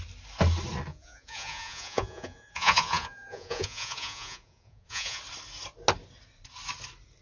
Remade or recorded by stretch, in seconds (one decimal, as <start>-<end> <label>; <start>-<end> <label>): 0.0-0.9 recorded; 0.9-5.2 remade; 5.2-7.2 recorded